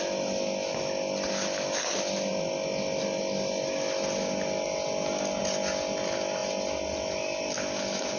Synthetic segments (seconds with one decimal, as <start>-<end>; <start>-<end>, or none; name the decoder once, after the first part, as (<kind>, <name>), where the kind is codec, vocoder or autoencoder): none